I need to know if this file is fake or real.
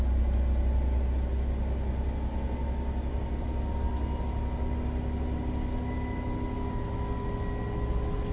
real